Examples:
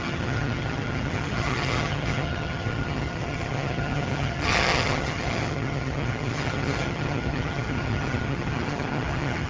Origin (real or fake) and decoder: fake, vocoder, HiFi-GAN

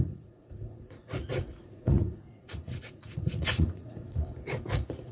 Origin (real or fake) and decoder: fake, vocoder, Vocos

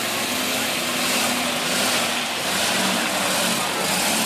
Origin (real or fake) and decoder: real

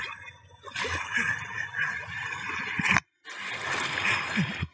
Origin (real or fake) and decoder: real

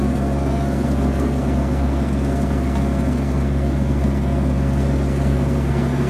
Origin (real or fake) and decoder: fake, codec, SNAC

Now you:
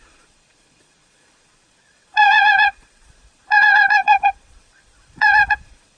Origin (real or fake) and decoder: fake, vocoder, Vocos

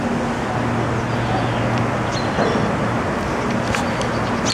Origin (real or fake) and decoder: real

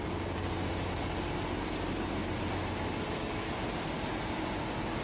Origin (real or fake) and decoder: real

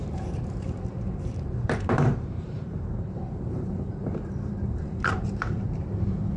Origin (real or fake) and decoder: fake, vocoder, BigVGAN v2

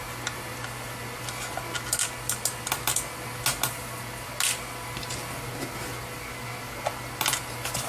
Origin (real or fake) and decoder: real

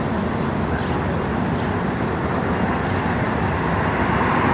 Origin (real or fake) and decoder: real